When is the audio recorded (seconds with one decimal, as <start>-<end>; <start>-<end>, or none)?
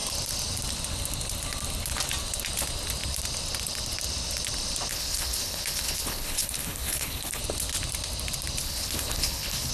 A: 0.0-4.9; 7.4-8.6